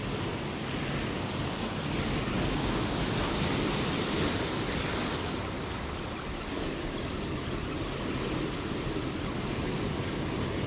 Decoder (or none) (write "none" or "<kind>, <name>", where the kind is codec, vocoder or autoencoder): none